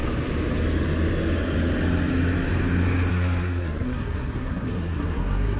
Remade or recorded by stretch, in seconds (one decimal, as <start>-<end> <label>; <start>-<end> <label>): 0.0-3.1 recorded; 3.1-5.6 remade